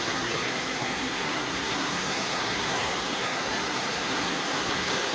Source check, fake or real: fake